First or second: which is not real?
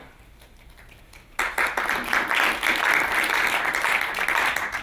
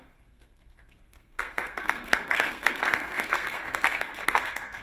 second